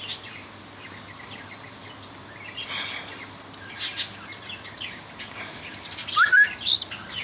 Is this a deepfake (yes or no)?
no